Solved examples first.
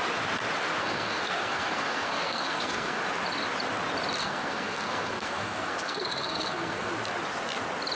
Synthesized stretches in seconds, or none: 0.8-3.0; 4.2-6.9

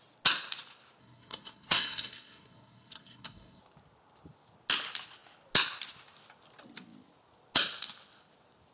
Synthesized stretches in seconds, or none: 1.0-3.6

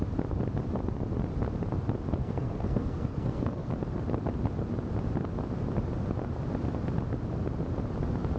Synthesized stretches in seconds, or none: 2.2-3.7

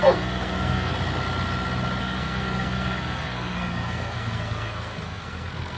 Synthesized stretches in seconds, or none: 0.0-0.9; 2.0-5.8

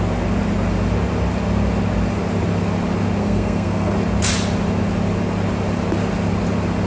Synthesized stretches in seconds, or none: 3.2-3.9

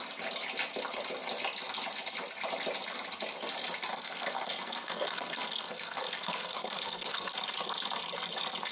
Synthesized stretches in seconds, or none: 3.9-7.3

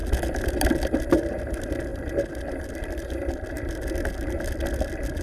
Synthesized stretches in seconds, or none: none